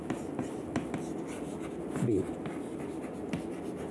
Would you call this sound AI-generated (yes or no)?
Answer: no